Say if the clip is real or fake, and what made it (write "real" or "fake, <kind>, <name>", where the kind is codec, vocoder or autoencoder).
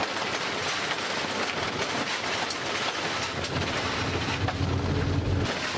real